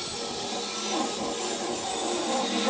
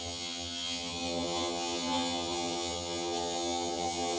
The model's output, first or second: second